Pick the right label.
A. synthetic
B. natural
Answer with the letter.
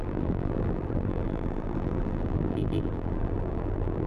A